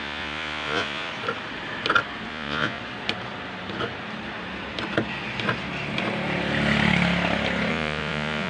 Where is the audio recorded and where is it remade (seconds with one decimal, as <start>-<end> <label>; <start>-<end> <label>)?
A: 0.0-1.1 remade; 1.1-2.3 recorded; 2.3-2.8 remade; 2.8-7.7 recorded; 7.7-8.5 remade